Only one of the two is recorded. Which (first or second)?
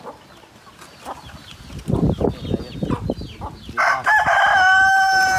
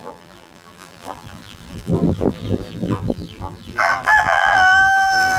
first